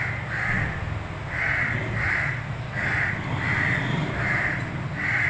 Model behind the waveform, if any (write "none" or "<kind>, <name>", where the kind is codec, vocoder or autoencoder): none